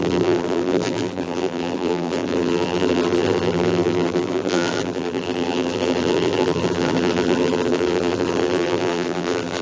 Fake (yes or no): yes